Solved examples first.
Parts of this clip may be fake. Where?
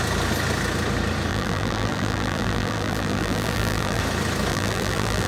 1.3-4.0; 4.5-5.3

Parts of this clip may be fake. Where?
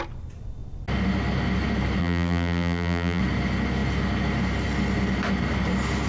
2.0-3.2